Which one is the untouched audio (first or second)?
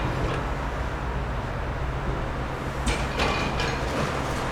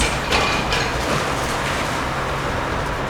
first